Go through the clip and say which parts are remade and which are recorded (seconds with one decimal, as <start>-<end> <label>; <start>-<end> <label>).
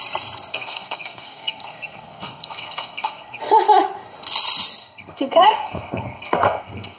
0.0-0.5 recorded; 0.5-3.4 remade; 3.4-4.8 recorded; 4.8-7.0 remade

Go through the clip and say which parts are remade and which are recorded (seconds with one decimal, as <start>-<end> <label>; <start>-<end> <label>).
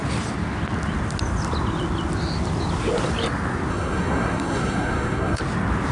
0.0-3.7 recorded; 3.7-5.4 remade; 5.4-5.9 recorded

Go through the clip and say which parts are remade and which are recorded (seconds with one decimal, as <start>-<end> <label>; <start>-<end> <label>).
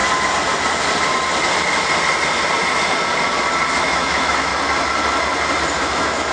0.0-3.8 recorded; 3.8-4.5 remade; 4.5-5.8 recorded; 5.8-6.3 remade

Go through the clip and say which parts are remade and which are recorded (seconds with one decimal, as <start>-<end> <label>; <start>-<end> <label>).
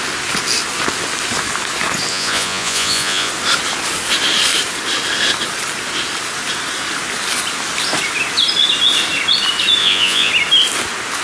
0.0-2.1 recorded; 2.1-3.3 remade; 3.3-9.8 recorded; 9.8-10.3 remade; 10.3-11.2 recorded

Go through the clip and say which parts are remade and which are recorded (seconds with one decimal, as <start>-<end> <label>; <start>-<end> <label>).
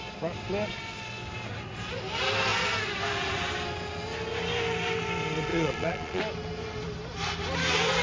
0.0-5.5 recorded; 5.5-6.2 remade; 6.2-8.0 recorded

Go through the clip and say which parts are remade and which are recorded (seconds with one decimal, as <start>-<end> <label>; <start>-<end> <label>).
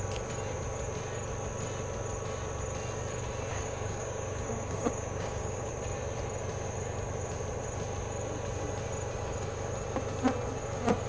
0.0-3.5 recorded; 3.5-5.7 remade; 5.7-11.1 recorded